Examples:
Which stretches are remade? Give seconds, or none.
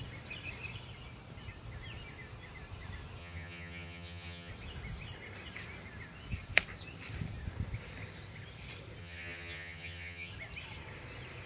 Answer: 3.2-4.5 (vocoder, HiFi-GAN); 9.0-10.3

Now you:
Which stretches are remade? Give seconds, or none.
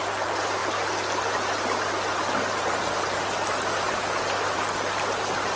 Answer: none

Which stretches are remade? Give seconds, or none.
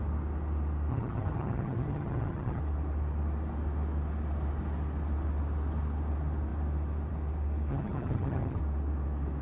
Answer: 0.9-2.6 (vocoder, HiFi-GAN); 7.7-8.6